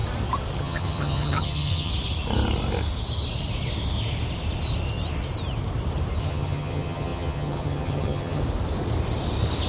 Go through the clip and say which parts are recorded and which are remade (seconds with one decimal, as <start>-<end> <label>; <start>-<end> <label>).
0.0-0.6 recorded; 0.6-1.9 remade; 1.9-6.2 recorded; 6.2-8.4 remade; 8.4-9.7 recorded